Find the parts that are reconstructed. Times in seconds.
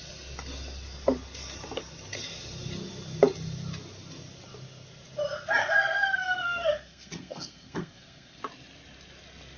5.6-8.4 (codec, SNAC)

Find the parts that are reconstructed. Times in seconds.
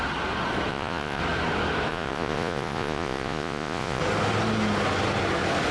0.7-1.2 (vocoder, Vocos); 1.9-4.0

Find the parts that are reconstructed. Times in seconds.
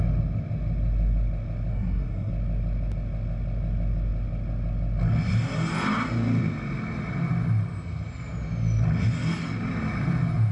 1.7-2.3 (codec, SNAC)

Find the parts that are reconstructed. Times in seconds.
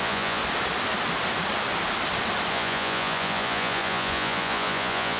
0.0-0.4 (vocoder, Vocos); 2.5-5.2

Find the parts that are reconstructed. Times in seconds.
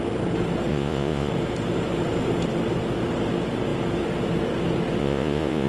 0.7-1.3 (vocoder, Vocos); 5.0-5.7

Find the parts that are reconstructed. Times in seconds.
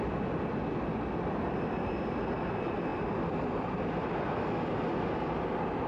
none